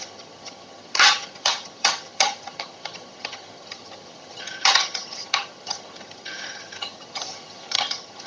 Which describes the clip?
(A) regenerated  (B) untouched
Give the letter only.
A